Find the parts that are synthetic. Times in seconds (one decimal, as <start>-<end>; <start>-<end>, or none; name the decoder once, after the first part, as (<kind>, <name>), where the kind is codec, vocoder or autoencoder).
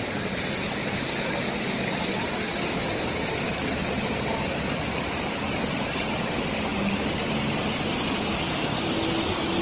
6.7-7.6 (vocoder, BigVGAN v2)